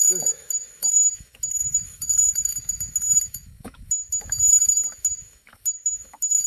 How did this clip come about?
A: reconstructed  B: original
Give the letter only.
A